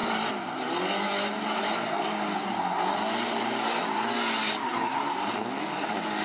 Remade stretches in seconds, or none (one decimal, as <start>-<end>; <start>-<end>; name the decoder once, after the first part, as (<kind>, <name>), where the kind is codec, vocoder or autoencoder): none